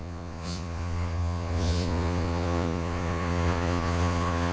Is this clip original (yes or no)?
no